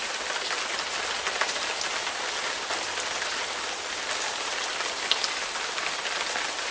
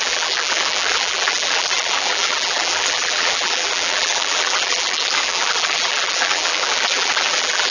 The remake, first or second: second